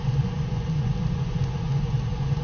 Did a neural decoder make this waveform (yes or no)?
yes